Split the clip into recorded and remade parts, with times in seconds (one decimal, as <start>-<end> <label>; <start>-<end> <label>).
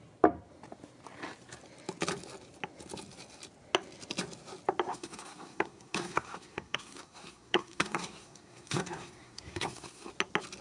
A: 0.0-4.9 recorded; 4.9-10.1 remade; 10.1-10.6 recorded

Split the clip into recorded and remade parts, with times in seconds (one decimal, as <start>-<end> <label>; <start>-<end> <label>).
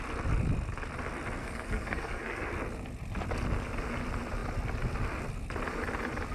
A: 0.0-1.4 recorded; 1.4-2.5 remade; 2.5-6.3 recorded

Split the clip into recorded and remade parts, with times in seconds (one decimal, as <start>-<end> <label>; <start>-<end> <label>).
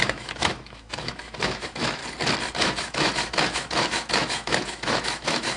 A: 0.0-2.0 remade; 2.0-2.5 recorded; 2.5-5.6 remade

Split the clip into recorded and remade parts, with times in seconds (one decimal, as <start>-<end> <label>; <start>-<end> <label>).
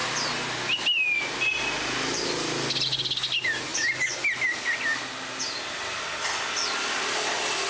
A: 0.0-7.7 recorded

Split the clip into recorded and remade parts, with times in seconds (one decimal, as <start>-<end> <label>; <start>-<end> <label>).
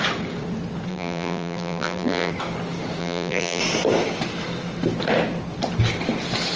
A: 0.0-0.9 recorded; 0.9-2.3 remade; 2.3-3.0 recorded; 3.0-3.6 remade; 3.6-6.6 recorded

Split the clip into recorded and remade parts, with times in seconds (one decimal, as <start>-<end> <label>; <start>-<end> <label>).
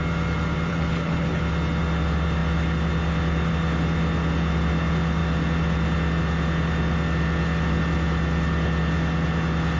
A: 0.0-0.7 recorded; 0.7-1.4 remade; 1.4-9.8 recorded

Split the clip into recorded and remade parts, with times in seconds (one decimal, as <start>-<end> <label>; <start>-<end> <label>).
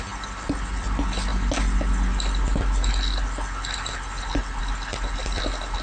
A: 0.0-5.8 recorded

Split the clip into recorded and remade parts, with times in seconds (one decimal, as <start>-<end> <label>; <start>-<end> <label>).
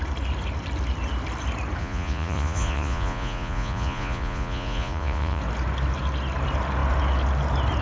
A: 0.0-1.8 recorded; 1.8-5.4 remade; 5.4-7.8 recorded